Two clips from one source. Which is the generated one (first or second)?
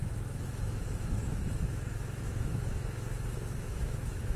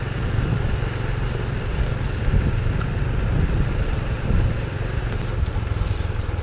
first